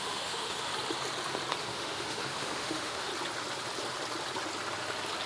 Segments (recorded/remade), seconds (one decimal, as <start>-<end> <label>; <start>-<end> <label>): 0.0-0.7 remade; 0.7-1.6 recorded; 1.6-3.1 remade; 3.1-5.3 recorded